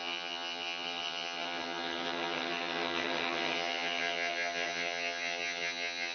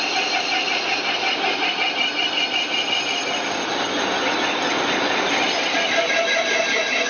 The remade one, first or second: first